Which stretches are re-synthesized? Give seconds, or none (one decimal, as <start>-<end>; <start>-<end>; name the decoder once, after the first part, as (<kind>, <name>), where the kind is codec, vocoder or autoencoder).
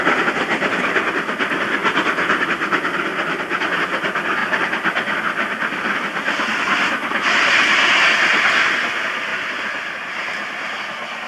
9.3-10.8 (vocoder, BigVGAN v2)